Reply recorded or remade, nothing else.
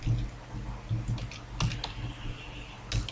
recorded